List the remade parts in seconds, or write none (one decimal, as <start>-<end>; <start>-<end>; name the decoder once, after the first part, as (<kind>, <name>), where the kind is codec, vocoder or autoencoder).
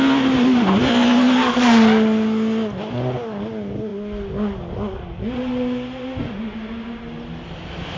none